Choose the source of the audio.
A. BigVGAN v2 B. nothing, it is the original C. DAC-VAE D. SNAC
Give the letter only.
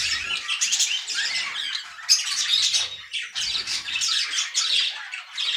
B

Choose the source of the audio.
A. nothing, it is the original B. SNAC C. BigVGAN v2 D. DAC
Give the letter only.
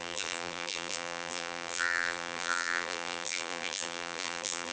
C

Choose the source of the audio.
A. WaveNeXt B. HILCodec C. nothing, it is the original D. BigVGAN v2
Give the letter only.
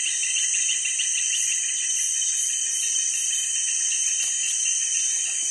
C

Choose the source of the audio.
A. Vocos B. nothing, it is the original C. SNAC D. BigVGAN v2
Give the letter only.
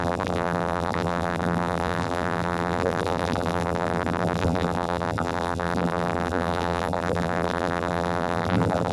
D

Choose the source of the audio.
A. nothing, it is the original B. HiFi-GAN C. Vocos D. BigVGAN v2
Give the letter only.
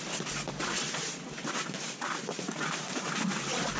D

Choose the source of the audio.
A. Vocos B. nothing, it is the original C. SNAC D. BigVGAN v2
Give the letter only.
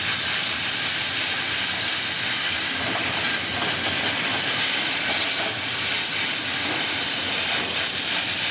D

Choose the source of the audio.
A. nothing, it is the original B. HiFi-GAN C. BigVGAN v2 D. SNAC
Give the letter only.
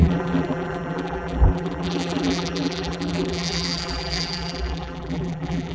C